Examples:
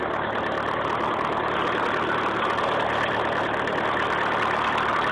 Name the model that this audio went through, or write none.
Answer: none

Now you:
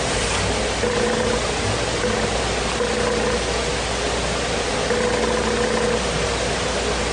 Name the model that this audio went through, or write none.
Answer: none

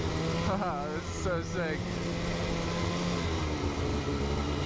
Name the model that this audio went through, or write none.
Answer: none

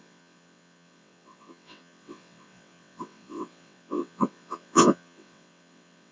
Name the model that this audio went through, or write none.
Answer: vocoder, WaveNeXt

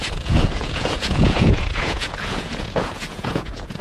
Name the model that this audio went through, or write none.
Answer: vocoder, Vocos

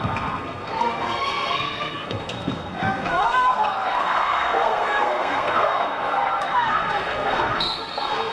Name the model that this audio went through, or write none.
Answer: codec, SNAC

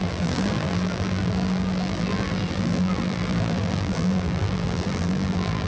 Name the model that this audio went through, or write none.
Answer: vocoder, BigVGAN v2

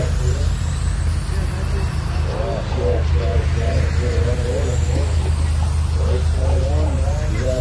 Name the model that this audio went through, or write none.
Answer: none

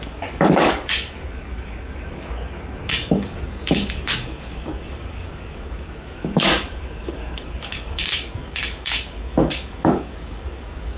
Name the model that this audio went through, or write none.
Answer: codec, DAC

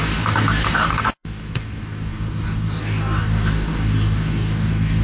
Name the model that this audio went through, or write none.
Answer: codec, DAC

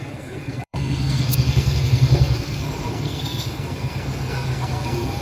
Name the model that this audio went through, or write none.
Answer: codec, SNAC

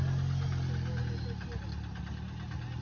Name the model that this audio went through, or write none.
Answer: none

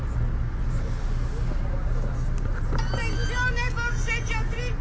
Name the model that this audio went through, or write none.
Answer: none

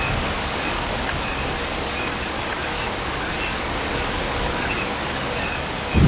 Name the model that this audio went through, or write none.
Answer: codec, DAC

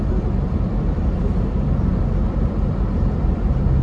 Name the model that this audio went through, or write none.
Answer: vocoder, BigVGAN v2